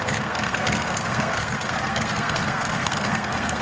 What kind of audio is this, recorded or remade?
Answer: remade